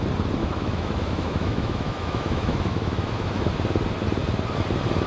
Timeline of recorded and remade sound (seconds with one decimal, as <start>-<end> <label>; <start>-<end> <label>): 0.0-0.4 recorded; 0.4-3.5 remade; 3.5-5.1 recorded